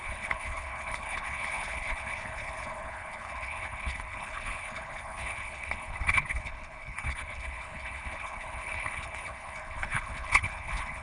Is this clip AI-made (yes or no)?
yes